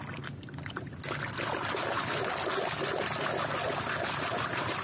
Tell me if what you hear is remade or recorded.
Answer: recorded